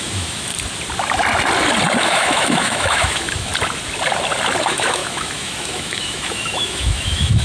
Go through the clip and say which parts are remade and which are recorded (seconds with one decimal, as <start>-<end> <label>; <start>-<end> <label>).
0.0-0.5 remade; 0.5-2.0 recorded; 2.0-3.5 remade; 3.5-4.6 recorded; 4.6-7.4 remade